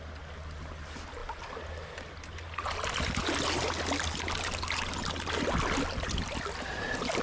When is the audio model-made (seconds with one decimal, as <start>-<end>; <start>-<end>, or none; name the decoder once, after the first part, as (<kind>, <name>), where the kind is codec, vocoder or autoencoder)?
none